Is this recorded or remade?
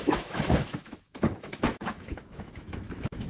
remade